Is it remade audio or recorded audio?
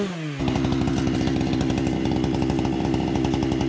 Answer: recorded